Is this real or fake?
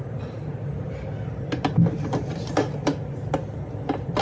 real